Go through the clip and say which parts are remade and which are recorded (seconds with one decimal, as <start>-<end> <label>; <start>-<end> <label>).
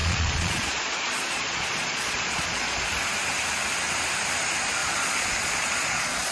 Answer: 0.0-2.9 remade; 2.9-4.8 recorded; 4.8-6.3 remade